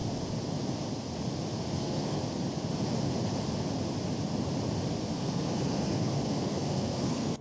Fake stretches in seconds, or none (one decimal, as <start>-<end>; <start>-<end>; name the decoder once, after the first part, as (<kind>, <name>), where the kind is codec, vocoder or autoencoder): 1.8-2.2 (codec, SNAC); 5.0-7.4